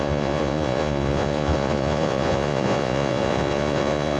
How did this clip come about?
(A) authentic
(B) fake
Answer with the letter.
B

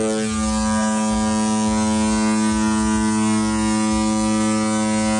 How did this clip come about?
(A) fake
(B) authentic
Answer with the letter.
B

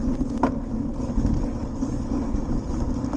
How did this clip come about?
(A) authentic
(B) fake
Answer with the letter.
A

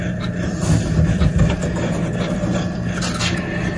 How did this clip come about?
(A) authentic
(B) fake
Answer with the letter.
A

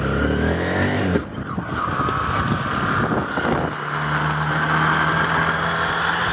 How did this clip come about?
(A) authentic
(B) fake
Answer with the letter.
A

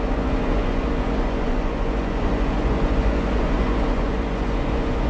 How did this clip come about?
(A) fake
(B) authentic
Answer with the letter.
A